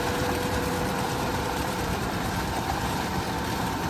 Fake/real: fake